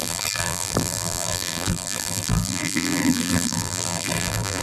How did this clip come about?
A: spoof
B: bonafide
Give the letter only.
A